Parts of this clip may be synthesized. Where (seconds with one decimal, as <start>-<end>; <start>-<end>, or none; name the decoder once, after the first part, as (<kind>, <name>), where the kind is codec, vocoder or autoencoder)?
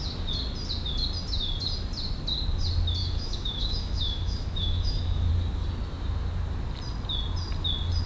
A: 3.0-5.3 (autoencoder, DAC-VAE)